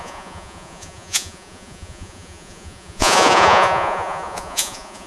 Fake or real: fake